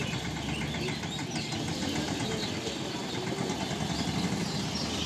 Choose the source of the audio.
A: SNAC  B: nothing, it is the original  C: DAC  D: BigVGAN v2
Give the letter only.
B